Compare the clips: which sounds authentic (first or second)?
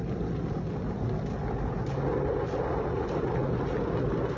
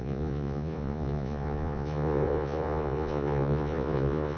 first